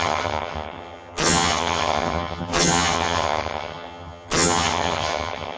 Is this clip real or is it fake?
fake